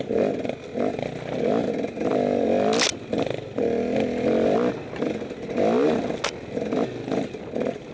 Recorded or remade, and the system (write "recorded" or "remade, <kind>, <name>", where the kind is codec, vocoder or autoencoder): recorded